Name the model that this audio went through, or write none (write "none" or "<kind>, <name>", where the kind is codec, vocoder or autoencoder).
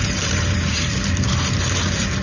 vocoder, BigVGAN v2